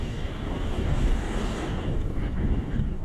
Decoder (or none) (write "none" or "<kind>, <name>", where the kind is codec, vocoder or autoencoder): codec, DAC